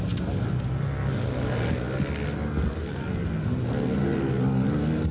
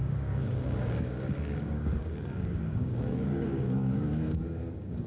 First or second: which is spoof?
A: second